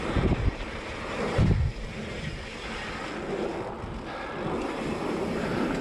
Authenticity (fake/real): real